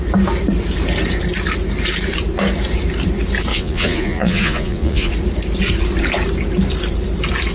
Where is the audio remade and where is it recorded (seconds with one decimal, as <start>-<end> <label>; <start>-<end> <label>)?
0.0-3.5 recorded; 3.5-5.1 remade; 5.1-7.5 recorded